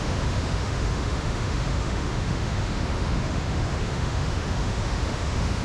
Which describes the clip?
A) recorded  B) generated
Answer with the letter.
B